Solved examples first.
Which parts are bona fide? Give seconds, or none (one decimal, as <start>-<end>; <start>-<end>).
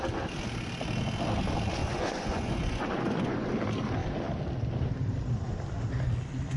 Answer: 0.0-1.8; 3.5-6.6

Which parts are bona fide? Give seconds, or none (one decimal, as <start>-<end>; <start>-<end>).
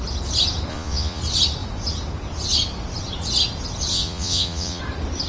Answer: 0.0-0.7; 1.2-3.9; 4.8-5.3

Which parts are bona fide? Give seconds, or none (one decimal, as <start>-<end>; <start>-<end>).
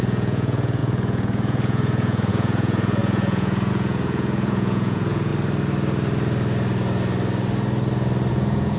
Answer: 5.3-8.3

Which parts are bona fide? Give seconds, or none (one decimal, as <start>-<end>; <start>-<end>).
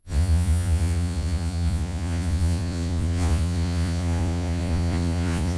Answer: none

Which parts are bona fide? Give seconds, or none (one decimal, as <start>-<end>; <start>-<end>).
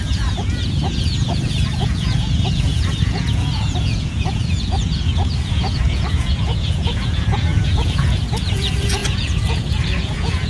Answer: none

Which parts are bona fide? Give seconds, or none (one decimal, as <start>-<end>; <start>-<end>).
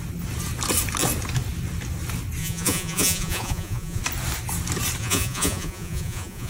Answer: 0.0-2.4; 4.0-5.0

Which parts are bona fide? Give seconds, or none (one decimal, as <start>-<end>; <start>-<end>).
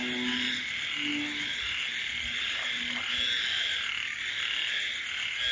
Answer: 0.0-5.5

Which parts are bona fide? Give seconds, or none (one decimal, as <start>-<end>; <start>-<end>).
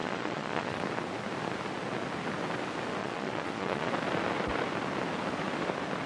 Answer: 0.8-3.0; 3.9-6.1